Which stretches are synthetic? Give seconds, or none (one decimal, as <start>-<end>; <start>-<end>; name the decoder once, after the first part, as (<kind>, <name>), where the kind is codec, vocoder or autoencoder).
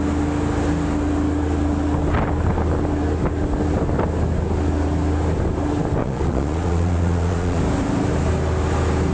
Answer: 6.0-7.6 (vocoder, Vocos)